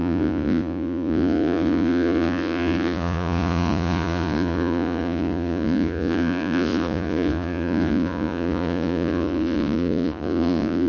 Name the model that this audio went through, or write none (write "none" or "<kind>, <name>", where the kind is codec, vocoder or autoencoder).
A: vocoder, Vocos